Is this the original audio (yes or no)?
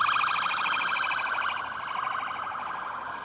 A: yes